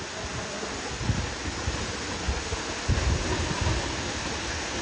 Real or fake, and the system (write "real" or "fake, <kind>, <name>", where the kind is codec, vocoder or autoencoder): real